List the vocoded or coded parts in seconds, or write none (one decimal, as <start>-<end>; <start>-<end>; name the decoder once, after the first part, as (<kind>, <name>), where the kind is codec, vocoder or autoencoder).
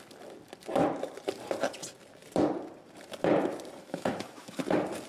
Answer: 3.8-4.6 (autoencoder, DAC-VAE)